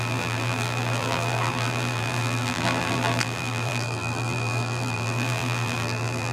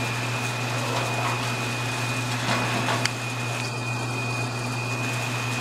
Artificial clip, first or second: first